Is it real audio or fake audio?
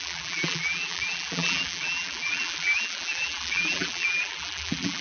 fake